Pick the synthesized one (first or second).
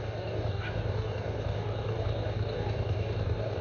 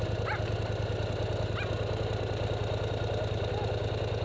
first